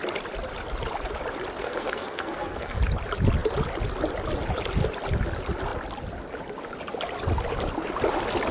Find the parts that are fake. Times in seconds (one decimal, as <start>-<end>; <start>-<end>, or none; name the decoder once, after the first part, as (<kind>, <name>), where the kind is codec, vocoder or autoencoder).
1.6-2.8 (codec, SNAC)

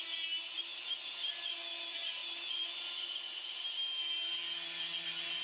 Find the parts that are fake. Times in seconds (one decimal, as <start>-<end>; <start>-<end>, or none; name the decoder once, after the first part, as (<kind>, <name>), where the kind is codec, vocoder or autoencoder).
none

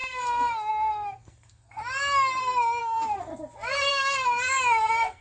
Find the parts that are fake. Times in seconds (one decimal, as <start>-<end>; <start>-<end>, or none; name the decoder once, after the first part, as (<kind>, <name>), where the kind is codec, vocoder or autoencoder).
0.0-1.8 (codec, SNAC); 2.8-3.3; 3.9-5.2

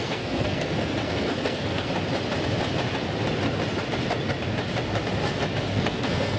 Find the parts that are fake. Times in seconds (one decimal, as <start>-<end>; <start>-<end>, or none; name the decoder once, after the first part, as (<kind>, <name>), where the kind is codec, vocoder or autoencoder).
0.0-1.9 (codec, SNAC); 5.7-6.4

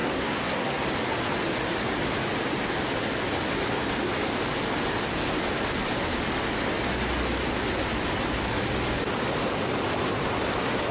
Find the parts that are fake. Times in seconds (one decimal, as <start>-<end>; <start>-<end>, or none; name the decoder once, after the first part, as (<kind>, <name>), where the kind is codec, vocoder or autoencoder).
0.0-0.8 (codec, SNAC)